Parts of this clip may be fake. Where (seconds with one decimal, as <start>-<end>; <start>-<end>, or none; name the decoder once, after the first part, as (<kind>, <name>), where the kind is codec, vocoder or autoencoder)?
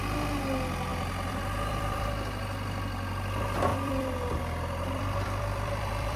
0.9-2.1 (vocoder, BigVGAN v2); 3.7-6.2